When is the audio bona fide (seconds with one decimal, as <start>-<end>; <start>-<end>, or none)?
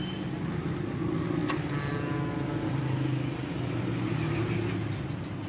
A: 0.0-5.5